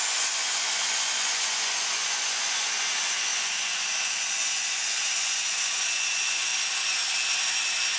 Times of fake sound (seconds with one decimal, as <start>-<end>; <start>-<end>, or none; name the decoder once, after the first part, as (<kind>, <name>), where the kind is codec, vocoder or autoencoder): 0.0-6.5 (vocoder, Vocos)